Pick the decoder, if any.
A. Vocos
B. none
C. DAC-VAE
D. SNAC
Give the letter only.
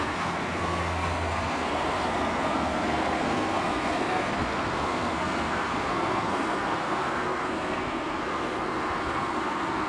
D